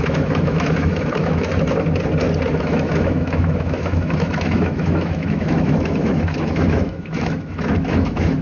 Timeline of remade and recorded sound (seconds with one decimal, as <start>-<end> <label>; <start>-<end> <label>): 0.0-1.5 remade; 1.5-2.5 recorded; 2.5-8.4 remade